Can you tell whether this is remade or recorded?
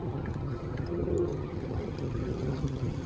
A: remade